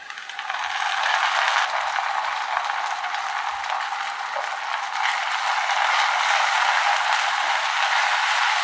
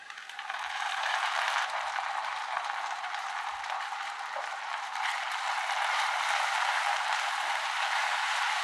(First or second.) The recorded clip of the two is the first